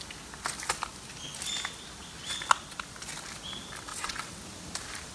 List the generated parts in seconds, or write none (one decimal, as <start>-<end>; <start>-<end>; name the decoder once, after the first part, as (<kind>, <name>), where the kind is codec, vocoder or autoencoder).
3.9-4.4 (vocoder, WaveNeXt)